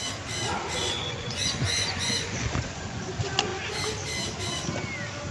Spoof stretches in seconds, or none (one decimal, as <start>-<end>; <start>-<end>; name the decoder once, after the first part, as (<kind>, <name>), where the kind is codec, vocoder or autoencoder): 0.8-3.0 (vocoder, Vocos)